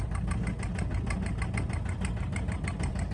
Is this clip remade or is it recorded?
recorded